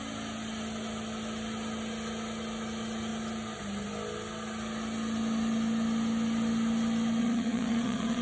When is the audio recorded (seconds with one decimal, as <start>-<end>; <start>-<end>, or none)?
0.0-7.2